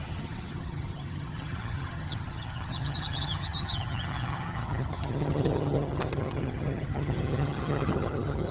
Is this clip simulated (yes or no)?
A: yes